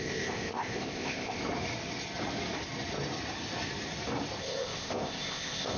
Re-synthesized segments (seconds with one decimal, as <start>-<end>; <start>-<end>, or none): 0.0-1.4; 4.4-5.8